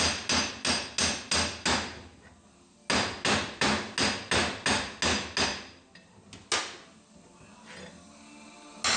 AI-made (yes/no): no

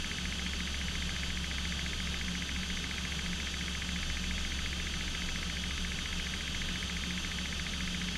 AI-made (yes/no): no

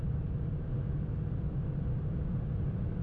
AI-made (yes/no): no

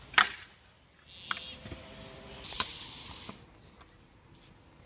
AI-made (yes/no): no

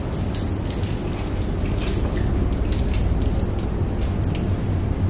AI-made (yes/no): no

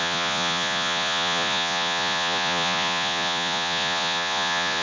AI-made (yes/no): yes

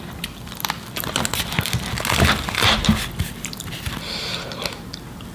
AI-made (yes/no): no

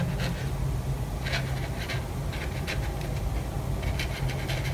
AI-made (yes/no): no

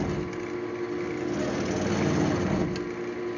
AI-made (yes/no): no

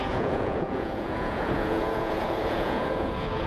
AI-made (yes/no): yes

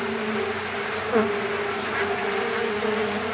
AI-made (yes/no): no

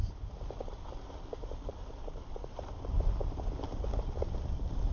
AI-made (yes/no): no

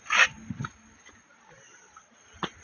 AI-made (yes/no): no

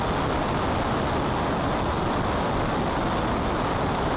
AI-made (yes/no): no